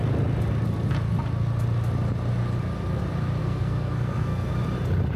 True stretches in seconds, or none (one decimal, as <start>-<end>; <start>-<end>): 0.0-3.4; 4.5-5.2